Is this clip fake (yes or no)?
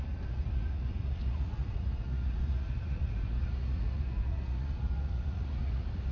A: yes